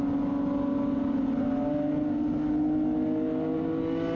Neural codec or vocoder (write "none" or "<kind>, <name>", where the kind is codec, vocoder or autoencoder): none